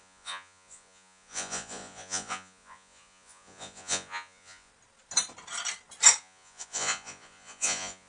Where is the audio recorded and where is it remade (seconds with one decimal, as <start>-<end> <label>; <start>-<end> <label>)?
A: 0.0-4.7 remade; 4.7-6.2 recorded; 6.2-8.1 remade